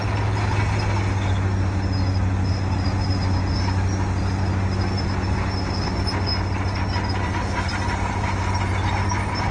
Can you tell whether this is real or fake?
real